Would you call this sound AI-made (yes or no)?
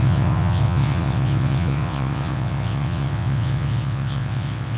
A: yes